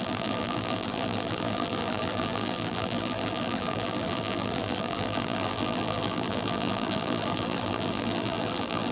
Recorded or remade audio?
remade